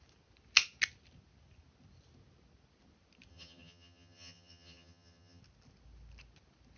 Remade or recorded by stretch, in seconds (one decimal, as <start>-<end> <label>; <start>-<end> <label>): 0.0-3.3 recorded; 3.3-5.4 remade; 5.4-6.8 recorded